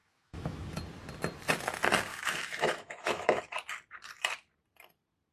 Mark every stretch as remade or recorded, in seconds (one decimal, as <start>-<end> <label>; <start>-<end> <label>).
0.0-0.8 remade; 0.8-2.1 recorded; 2.1-3.4 remade; 3.4-5.3 recorded

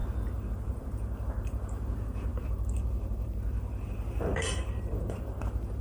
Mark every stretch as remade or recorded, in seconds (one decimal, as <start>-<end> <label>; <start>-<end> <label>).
0.0-5.8 remade

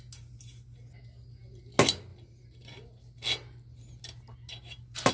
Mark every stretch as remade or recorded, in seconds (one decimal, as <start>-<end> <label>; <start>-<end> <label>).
0.0-5.1 recorded

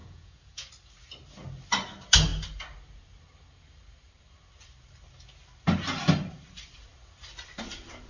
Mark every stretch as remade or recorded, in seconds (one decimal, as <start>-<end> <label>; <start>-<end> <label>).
0.0-0.7 remade; 0.7-8.1 recorded

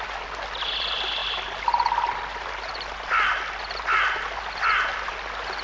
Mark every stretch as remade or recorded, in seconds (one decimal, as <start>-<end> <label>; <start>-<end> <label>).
0.0-5.6 recorded

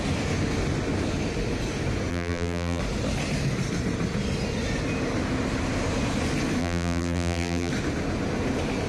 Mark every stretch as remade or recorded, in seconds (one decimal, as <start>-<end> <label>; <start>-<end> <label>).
0.0-2.1 recorded; 2.1-2.8 remade; 2.8-6.6 recorded; 6.6-7.7 remade; 7.7-8.9 recorded

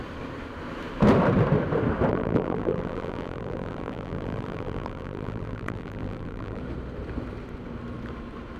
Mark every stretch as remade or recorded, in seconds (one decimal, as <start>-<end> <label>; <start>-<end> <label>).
0.0-2.1 recorded; 2.1-6.6 remade; 6.6-8.6 recorded